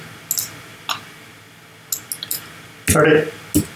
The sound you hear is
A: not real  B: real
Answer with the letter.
B